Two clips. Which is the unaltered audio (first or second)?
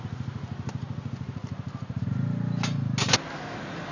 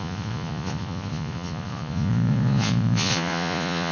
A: first